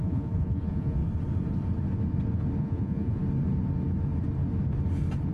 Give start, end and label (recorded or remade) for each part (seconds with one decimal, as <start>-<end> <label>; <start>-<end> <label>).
0.0-1.0 remade; 1.0-2.6 recorded; 2.6-3.2 remade; 3.2-5.3 recorded